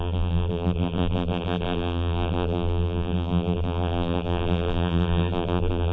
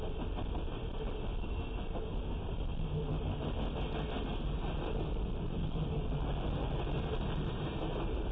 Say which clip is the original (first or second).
second